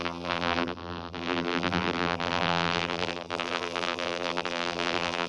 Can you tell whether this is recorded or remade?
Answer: remade